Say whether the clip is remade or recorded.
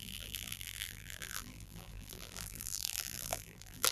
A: remade